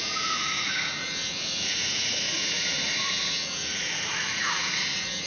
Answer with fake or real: fake